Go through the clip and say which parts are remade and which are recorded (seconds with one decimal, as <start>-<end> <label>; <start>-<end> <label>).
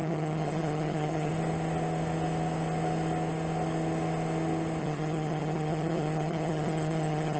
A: 0.0-1.3 remade; 1.3-4.8 recorded; 4.8-7.4 remade